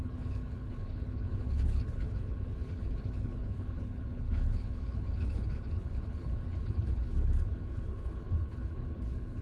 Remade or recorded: remade